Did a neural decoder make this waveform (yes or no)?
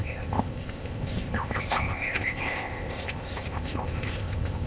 yes